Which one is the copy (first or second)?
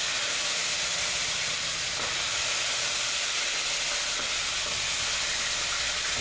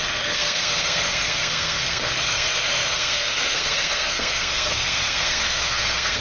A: second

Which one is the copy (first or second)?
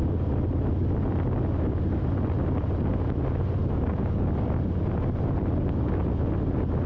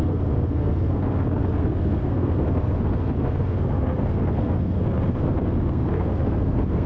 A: second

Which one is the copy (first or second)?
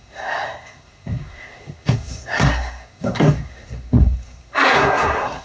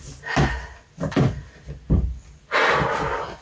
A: first